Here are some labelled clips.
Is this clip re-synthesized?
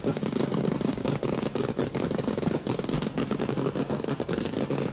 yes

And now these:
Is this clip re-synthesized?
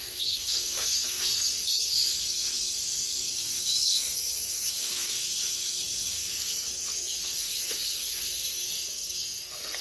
yes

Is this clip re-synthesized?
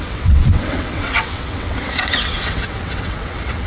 yes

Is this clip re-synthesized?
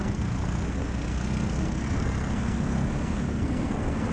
yes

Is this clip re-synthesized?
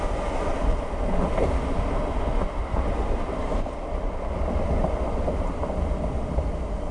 no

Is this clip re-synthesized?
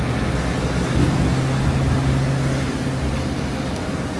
no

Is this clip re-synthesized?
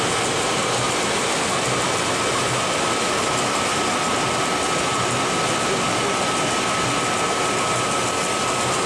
no